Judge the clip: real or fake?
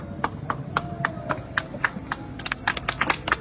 real